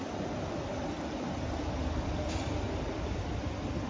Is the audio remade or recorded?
recorded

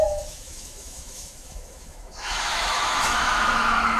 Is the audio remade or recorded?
remade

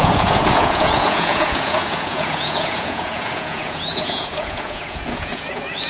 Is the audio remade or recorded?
remade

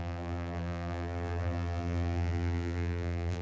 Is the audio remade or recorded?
remade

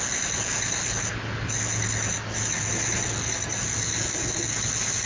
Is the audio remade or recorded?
recorded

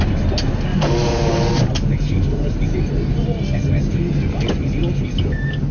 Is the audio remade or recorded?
recorded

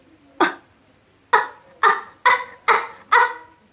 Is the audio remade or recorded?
recorded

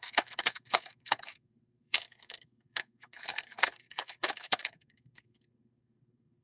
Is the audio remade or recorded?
remade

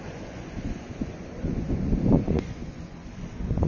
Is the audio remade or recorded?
remade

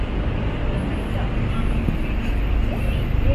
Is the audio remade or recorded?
recorded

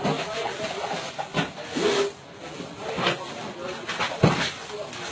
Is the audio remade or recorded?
recorded